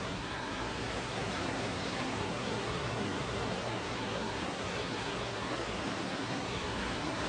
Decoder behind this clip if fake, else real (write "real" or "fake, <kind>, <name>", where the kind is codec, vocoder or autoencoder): fake, codec, SNAC